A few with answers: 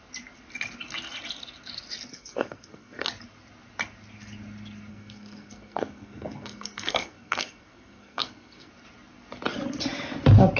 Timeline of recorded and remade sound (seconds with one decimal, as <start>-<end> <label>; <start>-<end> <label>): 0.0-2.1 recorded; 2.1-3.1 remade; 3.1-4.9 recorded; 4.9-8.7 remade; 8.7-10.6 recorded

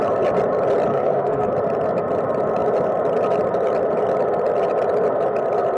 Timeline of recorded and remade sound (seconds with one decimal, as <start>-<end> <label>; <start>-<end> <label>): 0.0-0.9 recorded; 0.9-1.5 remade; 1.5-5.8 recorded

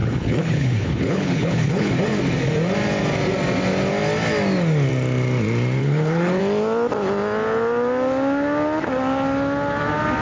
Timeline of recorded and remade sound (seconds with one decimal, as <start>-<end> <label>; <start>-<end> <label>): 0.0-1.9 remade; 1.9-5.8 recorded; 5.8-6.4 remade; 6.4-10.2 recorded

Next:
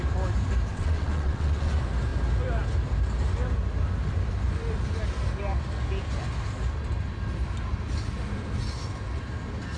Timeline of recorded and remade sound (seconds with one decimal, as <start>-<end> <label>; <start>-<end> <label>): 0.0-0.7 recorded; 0.7-1.7 remade; 1.7-9.8 recorded

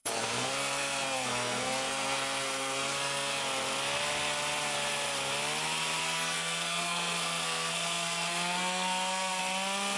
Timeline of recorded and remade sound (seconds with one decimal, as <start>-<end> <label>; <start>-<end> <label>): 0.0-3.4 remade; 3.4-6.0 recorded; 6.0-9.4 remade; 9.4-10.0 recorded

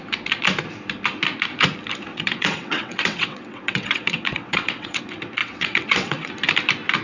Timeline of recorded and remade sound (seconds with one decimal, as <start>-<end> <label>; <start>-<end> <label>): 0.0-2.1 recorded; 2.1-5.0 remade; 5.0-5.4 recorded; 5.4-6.3 remade; 6.3-7.0 recorded

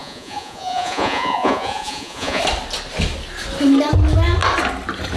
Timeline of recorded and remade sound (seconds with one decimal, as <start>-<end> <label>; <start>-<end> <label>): 0.0-2.4 remade; 2.4-5.2 recorded

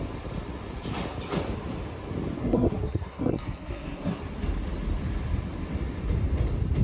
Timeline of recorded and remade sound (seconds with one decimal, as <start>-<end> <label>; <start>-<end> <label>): 0.0-2.4 recorded; 2.4-4.2 remade; 4.2-6.8 recorded